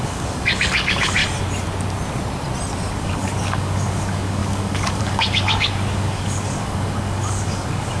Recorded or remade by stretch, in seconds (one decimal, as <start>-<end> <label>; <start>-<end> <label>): 0.0-1.2 remade; 1.2-3.0 recorded; 3.0-8.0 remade